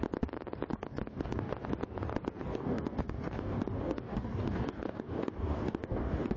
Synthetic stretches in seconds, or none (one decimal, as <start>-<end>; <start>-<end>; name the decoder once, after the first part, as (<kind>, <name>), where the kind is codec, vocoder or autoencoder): 0.7-1.5 (codec, DAC); 2.5-6.4